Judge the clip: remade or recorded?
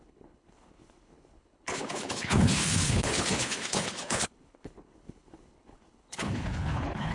remade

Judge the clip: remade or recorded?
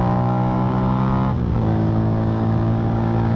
remade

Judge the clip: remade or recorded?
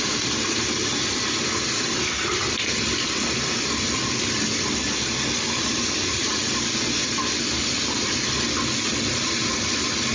recorded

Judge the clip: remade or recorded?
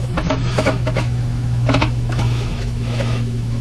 remade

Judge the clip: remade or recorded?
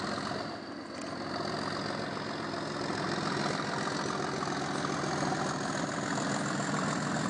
recorded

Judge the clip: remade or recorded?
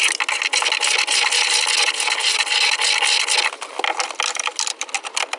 recorded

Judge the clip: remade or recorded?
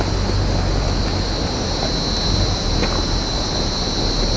recorded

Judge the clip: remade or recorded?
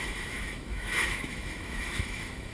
remade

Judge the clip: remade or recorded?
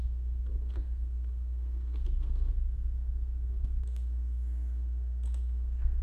remade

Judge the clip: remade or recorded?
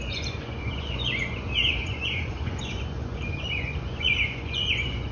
remade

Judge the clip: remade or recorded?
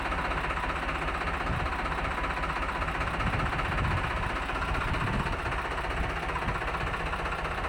recorded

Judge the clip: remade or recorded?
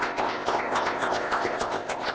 remade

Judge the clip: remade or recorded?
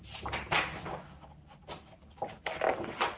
recorded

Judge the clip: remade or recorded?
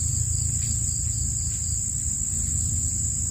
recorded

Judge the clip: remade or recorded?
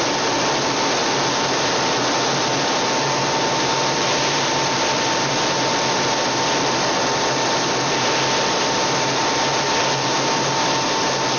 recorded